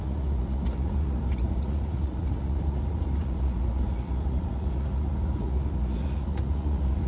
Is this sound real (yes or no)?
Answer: no